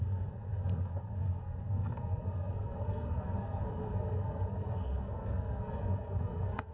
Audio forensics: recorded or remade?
remade